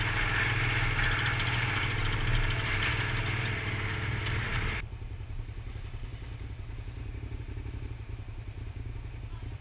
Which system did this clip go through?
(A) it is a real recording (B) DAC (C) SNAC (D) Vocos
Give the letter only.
A